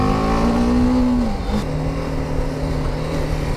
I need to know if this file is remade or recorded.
recorded